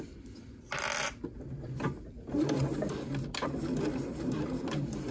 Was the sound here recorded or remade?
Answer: recorded